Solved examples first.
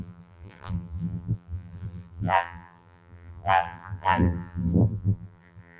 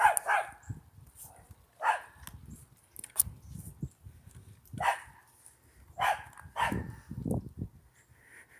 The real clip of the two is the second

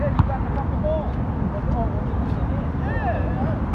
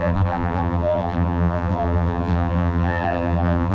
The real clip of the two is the first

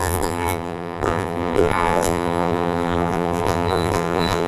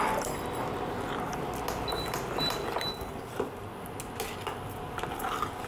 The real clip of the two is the second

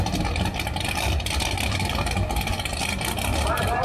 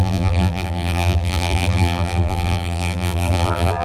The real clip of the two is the first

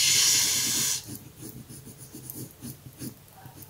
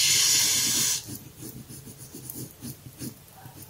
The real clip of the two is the first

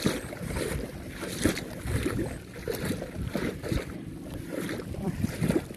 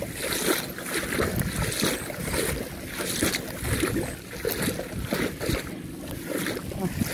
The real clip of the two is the second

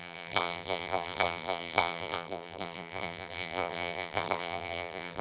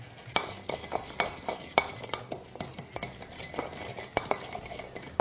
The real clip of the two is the second